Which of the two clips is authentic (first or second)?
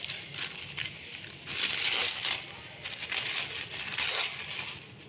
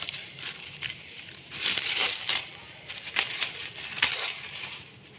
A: first